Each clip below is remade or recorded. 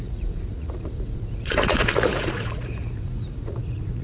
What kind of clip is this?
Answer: remade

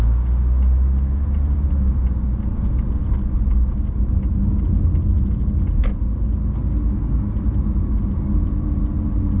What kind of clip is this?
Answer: recorded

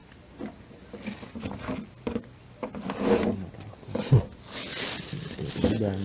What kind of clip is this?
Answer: recorded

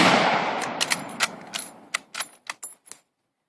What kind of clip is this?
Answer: recorded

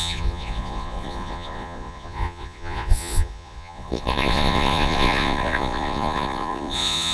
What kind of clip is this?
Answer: remade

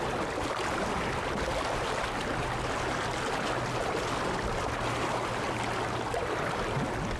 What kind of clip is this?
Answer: recorded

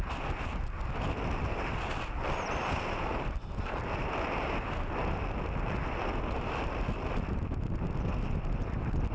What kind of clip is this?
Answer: recorded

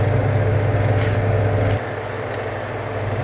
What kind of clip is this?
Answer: recorded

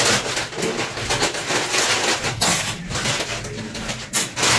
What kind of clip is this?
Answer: recorded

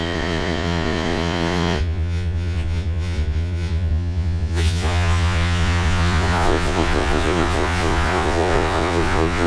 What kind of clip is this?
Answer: remade